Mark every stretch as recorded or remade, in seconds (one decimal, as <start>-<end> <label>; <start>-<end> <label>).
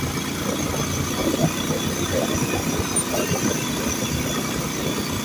0.0-5.2 recorded